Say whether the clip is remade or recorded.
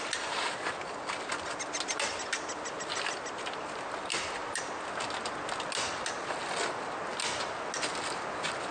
recorded